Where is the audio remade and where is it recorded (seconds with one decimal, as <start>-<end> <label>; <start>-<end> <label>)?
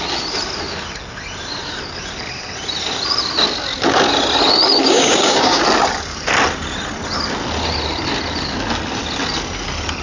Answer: 0.0-4.8 recorded; 4.8-5.6 remade; 5.6-10.0 recorded